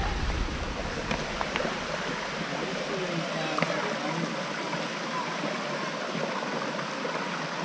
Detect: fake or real real